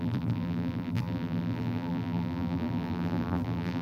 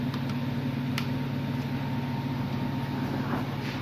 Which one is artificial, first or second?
first